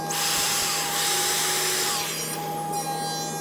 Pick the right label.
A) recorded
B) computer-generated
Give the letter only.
A